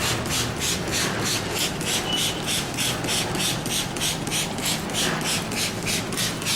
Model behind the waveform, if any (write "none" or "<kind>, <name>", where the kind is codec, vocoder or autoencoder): none